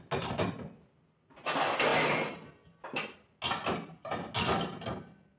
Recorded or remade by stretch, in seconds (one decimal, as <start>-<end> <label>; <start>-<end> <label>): 0.0-5.4 recorded